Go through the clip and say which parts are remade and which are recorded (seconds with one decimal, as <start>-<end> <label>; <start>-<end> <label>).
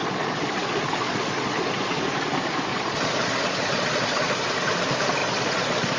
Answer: 0.0-2.0 remade; 2.0-2.7 recorded; 2.7-4.8 remade; 4.8-5.2 recorded; 5.2-6.0 remade